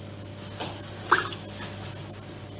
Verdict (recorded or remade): recorded